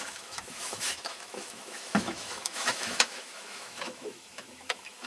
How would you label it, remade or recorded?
remade